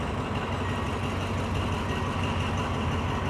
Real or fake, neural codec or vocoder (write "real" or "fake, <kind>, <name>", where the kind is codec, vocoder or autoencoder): real